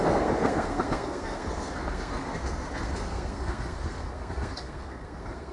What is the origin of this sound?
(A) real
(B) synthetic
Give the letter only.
B